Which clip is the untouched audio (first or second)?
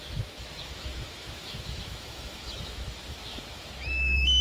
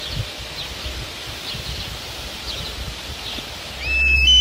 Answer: second